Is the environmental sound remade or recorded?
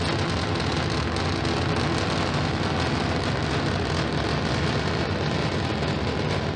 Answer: recorded